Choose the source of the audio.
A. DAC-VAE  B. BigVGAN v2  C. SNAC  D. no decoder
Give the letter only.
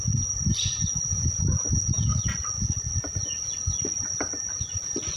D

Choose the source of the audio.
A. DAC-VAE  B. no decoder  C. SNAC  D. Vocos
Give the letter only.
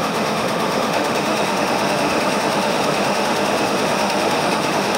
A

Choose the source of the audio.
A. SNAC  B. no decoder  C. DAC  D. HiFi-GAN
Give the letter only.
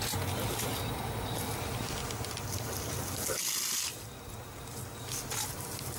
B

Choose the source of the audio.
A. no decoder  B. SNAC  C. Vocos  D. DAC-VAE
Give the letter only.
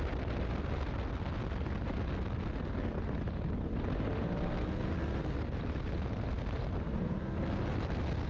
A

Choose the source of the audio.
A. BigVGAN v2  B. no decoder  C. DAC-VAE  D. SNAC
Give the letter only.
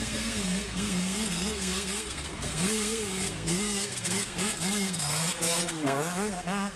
D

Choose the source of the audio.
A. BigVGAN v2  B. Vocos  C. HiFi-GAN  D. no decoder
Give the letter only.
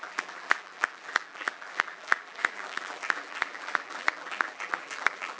A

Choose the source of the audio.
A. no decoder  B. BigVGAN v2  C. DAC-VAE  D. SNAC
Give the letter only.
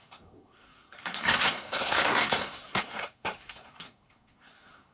D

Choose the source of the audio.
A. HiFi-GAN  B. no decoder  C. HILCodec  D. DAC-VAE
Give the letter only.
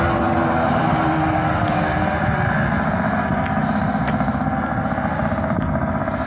B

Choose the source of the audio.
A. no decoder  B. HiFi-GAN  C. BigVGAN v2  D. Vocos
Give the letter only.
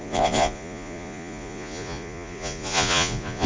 D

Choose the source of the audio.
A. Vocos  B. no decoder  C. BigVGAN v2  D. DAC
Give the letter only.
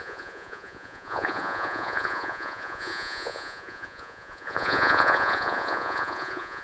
A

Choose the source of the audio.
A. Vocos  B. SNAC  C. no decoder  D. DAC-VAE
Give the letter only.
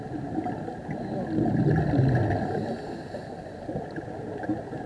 C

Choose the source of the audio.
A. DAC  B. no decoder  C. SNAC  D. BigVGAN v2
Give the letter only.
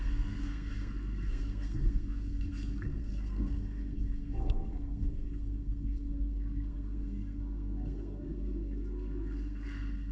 C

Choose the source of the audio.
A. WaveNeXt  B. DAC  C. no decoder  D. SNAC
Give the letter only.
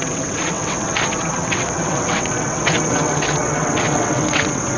A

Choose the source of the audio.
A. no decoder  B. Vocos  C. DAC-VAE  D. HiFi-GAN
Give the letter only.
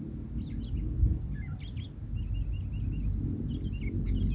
A